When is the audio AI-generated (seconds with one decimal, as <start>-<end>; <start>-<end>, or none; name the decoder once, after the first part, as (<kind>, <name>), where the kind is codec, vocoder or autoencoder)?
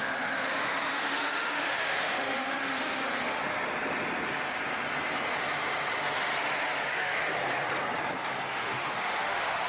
0.0-3.4 (autoencoder, DAC-VAE); 6.9-7.4; 8.5-9.7